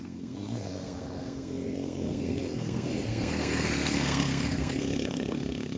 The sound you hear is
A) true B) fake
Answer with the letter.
B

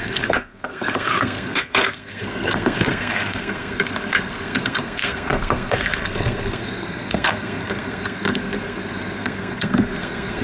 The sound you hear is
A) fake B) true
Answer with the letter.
A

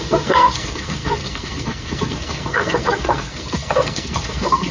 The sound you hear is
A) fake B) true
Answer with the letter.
A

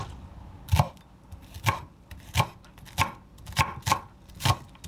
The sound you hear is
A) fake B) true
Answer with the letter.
B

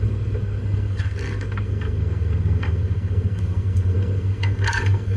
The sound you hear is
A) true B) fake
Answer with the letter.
B